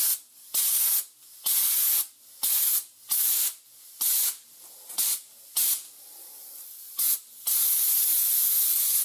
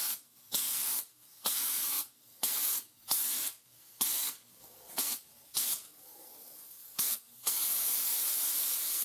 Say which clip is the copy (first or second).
second